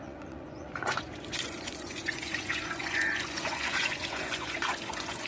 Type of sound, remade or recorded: remade